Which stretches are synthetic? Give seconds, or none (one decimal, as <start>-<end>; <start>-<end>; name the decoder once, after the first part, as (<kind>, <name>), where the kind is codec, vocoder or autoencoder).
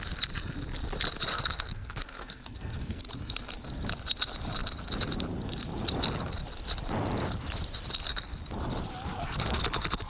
1.3-3.0 (codec, SNAC); 9.1-9.6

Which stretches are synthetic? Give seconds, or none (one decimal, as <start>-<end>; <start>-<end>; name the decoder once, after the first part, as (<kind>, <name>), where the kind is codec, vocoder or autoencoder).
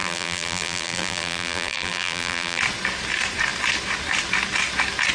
0.0-2.6 (vocoder, BigVGAN v2)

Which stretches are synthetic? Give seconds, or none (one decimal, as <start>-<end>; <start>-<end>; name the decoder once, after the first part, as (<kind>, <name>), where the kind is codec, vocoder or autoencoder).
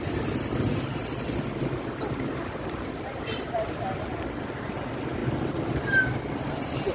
none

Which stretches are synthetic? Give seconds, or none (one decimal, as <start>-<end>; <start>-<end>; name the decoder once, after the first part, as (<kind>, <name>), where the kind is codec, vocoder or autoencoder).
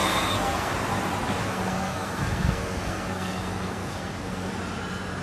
0.0-0.7 (codec, SNAC); 1.4-4.5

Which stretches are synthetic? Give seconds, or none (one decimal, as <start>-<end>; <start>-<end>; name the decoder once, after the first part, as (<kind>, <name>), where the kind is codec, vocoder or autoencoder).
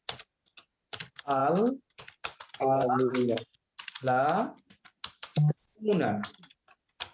none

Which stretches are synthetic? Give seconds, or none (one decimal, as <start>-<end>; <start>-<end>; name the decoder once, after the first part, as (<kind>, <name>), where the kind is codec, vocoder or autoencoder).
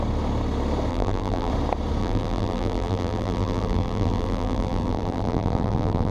0.9-1.5 (vocoder, BigVGAN v2); 2.0-6.1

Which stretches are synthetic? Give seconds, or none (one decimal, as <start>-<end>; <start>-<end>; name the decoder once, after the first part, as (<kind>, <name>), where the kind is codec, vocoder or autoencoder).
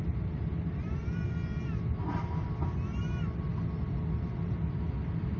none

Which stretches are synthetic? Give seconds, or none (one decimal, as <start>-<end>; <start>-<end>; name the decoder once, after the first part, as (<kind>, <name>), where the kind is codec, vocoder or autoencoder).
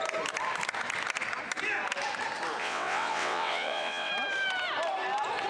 2.6-4.1 (vocoder, WaveNeXt)